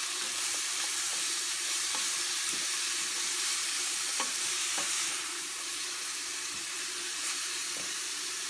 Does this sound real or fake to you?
fake